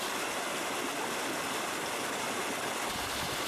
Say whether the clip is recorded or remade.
recorded